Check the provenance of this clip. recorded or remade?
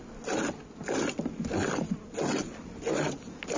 recorded